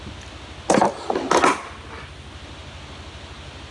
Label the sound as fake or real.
real